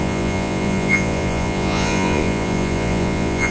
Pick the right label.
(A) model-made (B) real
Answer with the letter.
A